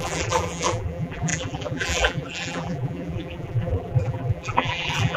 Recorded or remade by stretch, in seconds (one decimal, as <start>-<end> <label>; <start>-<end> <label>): 0.0-5.2 remade